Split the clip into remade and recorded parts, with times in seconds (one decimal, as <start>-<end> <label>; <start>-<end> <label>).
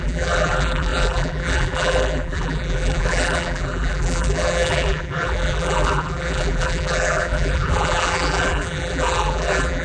0.0-9.8 remade